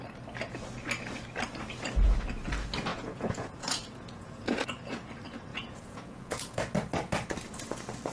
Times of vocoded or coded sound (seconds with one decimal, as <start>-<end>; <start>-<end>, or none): 2.9-5.1; 5.5-6.6